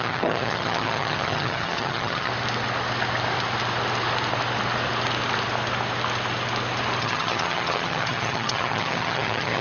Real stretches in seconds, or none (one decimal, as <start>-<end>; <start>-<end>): 2.3-7.0